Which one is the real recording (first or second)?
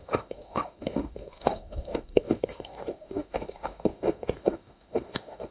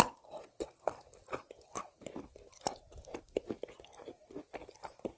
second